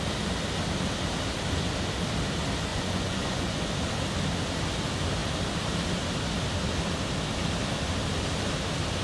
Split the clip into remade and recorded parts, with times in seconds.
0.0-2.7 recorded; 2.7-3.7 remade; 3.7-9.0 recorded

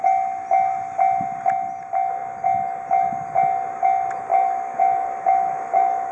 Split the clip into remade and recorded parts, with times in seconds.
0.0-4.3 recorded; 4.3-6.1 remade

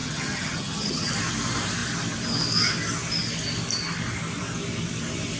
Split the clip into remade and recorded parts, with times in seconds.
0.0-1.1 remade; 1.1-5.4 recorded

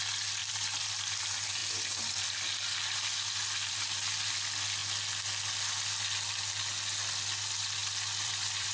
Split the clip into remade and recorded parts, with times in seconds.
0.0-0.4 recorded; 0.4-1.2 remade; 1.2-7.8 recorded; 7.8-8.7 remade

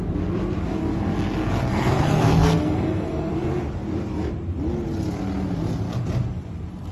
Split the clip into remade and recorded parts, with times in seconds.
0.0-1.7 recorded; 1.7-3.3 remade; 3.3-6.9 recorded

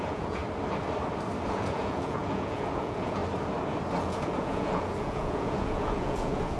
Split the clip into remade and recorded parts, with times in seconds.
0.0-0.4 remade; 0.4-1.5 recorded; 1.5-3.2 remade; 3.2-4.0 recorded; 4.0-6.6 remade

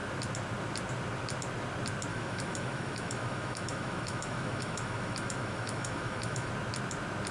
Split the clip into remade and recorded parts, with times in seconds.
0.0-2.1 recorded; 2.1-6.5 remade; 6.5-7.3 recorded